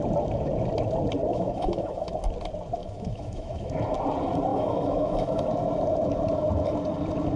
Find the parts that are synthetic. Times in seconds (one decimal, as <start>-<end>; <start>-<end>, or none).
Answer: 1.3-2.2; 2.8-3.7; 4.5-5.5